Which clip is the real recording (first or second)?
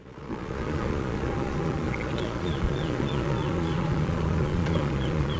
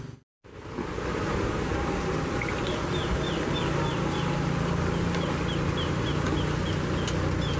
second